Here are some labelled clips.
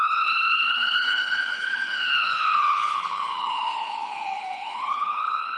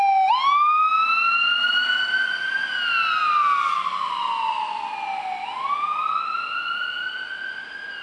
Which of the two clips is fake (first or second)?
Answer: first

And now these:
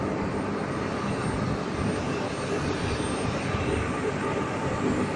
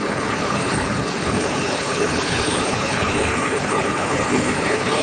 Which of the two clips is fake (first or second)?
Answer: second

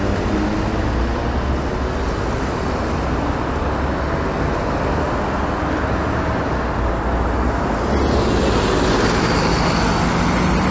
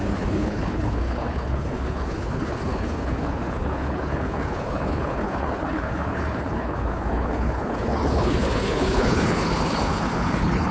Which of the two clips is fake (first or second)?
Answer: second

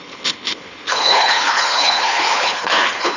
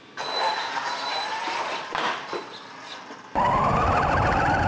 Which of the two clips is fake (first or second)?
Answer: first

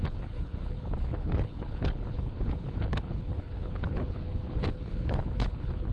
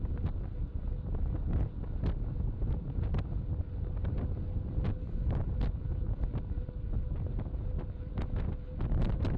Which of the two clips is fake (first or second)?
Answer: first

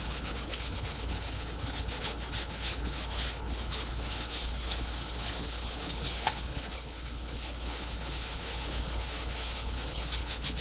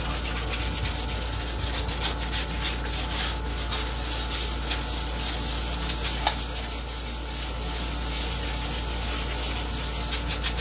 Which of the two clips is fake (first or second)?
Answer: first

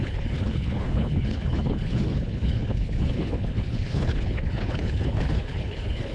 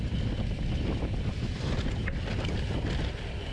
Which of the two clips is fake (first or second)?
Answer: first